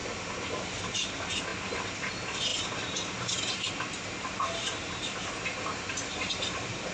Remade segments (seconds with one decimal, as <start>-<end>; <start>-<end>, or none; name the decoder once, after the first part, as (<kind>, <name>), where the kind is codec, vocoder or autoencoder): none